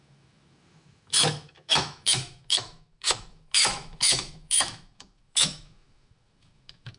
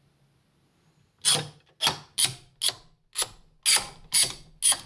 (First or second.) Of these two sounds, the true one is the second